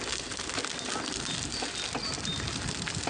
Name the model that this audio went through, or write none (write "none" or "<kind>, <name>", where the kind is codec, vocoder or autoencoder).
none